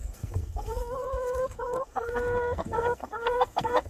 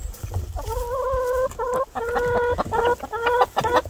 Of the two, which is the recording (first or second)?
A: second